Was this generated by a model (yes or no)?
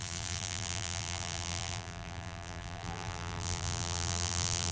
yes